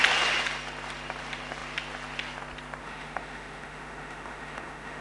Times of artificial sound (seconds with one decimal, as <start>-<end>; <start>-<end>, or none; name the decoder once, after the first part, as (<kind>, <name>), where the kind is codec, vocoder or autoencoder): 2.8-5.0 (autoencoder, DAC-VAE)